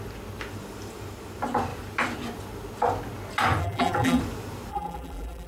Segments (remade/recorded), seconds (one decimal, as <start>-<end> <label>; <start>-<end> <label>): 0.0-3.6 recorded; 3.6-4.2 remade; 4.2-4.7 recorded; 4.7-5.5 remade